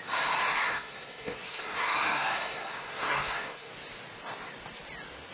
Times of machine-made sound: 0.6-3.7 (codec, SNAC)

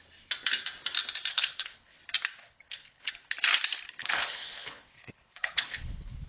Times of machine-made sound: 1.3-2.0 (codec, HILCodec); 2.4-3.1; 4.0-6.3

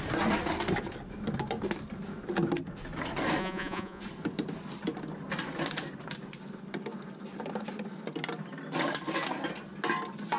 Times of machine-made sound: 3.4-4.0 (vocoder, Vocos)

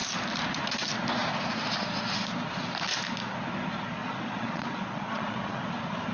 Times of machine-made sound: 4.0-5.6 (vocoder, Vocos)

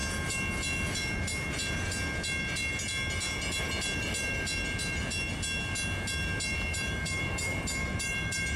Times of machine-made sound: 6.7-8.6 (vocoder, BigVGAN v2)

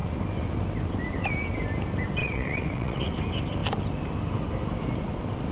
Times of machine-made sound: 2.2-3.1 (vocoder, WaveNeXt)